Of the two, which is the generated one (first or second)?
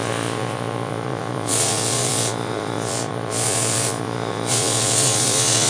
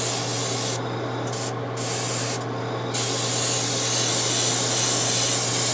first